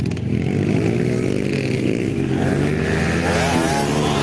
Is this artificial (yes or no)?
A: no